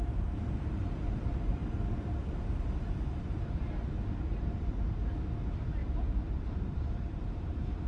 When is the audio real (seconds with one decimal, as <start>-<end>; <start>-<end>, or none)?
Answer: 1.5-2.5; 5.8-6.3